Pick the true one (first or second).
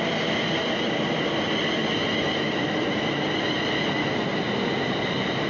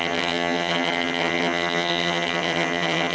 first